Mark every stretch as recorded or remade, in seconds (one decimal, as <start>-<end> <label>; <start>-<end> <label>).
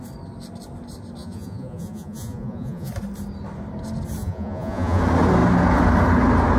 0.0-1.2 recorded; 1.2-2.9 remade; 2.9-4.2 recorded; 4.2-5.0 remade; 5.0-6.6 recorded